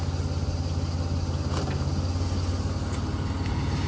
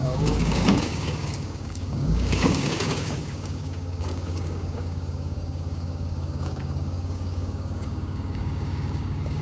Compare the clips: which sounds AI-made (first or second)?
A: second